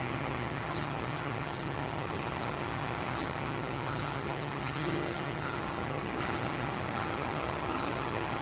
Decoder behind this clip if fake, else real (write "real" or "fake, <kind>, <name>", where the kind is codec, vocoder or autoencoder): fake, vocoder, HiFi-GAN